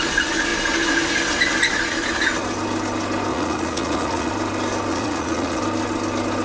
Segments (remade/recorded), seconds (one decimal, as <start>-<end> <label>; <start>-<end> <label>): 0.0-3.3 recorded; 3.3-4.3 remade; 4.3-4.9 recorded; 4.9-5.6 remade; 5.6-6.4 recorded

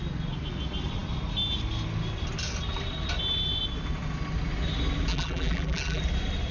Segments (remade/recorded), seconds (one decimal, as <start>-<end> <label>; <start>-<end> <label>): 0.0-5.1 recorded; 5.1-6.0 remade; 6.0-6.5 recorded

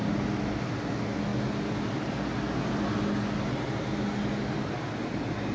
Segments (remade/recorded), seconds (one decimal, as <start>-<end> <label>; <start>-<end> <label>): 0.0-5.5 recorded